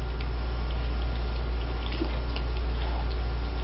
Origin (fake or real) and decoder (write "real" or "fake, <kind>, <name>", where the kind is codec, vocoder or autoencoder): real